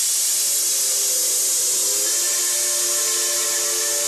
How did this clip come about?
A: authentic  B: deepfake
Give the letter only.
A